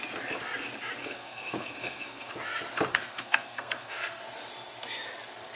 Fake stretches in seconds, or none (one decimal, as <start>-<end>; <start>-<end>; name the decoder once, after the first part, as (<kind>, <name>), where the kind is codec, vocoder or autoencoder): 1.0-2.3 (codec, SNAC); 2.9-4.2